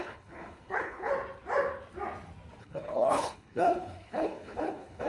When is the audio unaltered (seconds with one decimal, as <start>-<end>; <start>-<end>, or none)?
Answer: 1.1-2.6